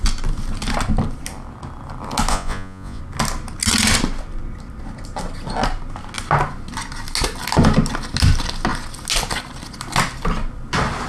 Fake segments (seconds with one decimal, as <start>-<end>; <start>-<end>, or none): 2.3-3.0